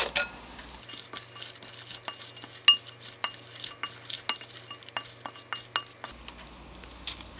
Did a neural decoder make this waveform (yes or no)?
no